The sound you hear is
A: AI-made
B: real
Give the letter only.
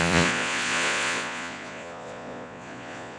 A